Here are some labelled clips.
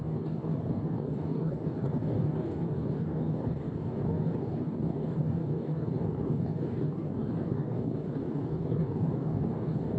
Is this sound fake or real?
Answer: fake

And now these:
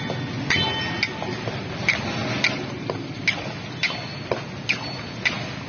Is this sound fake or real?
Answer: real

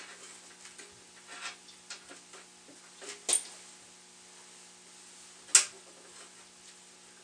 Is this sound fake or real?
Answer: real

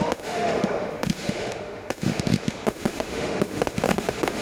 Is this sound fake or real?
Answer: fake